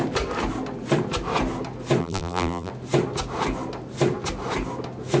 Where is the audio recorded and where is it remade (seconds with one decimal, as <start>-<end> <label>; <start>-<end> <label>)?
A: 0.0-2.0 recorded; 2.0-2.7 remade; 2.7-5.2 recorded